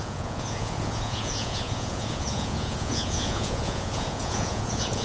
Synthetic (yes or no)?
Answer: yes